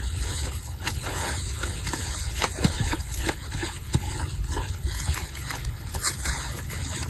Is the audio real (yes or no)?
no